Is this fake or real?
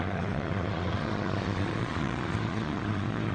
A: fake